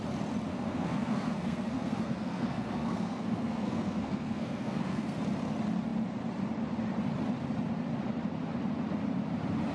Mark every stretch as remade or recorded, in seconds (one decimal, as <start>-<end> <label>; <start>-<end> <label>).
0.0-0.5 recorded; 0.5-5.2 remade; 5.2-9.7 recorded